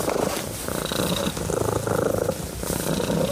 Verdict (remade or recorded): recorded